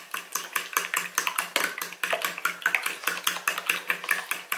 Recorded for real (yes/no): yes